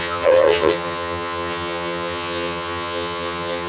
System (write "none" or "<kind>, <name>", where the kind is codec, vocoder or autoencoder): vocoder, HiFi-GAN